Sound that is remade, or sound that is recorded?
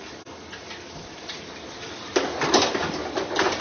recorded